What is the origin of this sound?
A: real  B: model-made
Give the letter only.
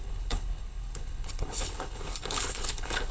B